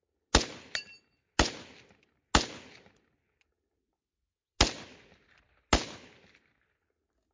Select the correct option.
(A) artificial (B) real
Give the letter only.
B